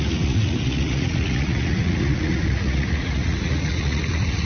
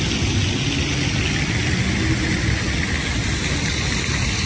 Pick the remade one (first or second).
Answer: first